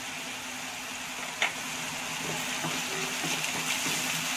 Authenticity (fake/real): real